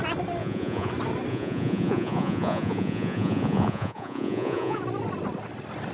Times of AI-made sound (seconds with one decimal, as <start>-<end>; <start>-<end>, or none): 0.4-0.9; 1.3-4.8